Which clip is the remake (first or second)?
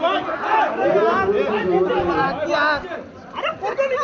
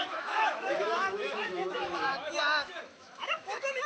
second